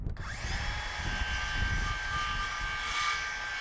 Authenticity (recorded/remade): recorded